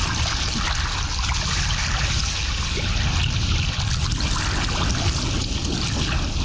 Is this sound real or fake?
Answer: real